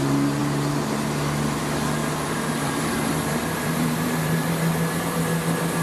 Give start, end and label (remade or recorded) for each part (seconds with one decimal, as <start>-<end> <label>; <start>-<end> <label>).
0.0-2.0 recorded; 2.0-4.5 remade; 4.5-5.8 recorded